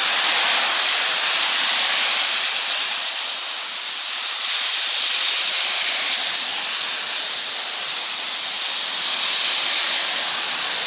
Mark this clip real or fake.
real